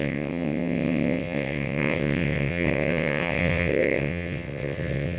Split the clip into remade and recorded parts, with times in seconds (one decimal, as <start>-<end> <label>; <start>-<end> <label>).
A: 0.0-5.2 remade